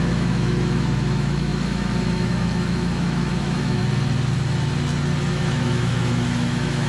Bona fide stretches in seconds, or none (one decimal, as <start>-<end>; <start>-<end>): 3.8-5.3

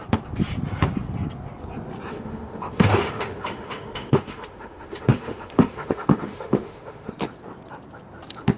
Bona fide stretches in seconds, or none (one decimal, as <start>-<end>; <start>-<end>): 0.0-2.1; 7.1-8.6

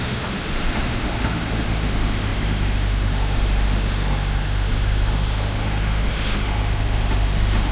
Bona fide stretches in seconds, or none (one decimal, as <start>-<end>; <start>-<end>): none